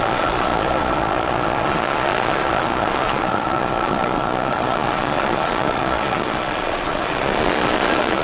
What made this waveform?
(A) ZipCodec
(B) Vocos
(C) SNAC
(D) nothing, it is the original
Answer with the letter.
B